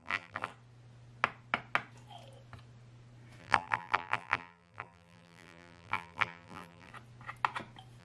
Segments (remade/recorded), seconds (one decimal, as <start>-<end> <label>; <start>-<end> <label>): 0.0-0.5 remade; 0.5-3.4 recorded; 3.4-6.9 remade; 6.9-8.0 recorded